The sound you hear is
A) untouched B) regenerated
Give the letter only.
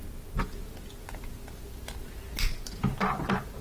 A